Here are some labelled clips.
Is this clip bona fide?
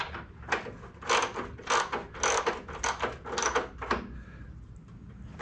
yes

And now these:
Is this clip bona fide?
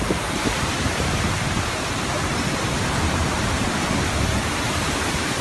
no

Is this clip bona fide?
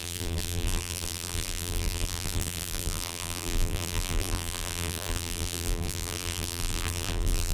no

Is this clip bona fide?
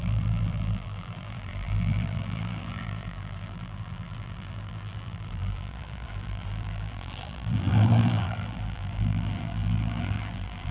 no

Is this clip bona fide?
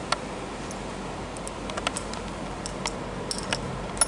yes